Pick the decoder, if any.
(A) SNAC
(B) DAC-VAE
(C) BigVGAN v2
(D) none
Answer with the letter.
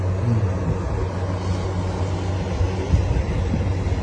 D